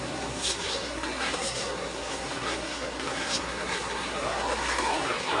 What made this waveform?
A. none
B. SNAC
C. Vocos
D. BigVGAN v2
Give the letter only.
B